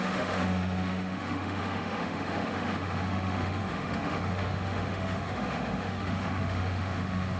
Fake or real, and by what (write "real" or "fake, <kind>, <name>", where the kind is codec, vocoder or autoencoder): fake, autoencoder, DAC-VAE